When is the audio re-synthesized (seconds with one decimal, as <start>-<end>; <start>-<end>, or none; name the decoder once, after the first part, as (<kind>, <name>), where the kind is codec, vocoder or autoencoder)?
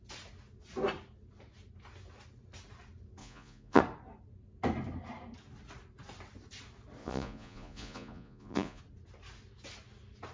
3.2-3.8 (vocoder, Vocos); 7.0-8.8